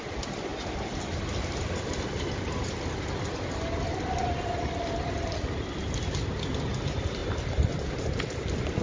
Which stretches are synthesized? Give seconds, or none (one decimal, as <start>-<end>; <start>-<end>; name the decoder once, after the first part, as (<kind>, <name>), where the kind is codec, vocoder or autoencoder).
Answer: none